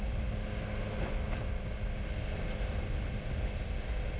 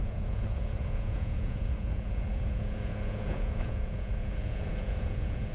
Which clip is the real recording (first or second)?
first